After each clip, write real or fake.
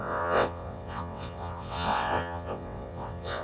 fake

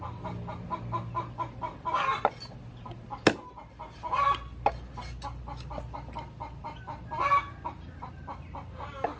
real